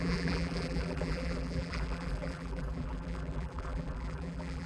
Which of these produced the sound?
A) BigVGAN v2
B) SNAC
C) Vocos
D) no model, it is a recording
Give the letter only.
A